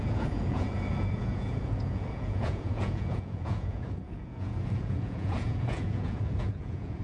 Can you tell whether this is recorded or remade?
remade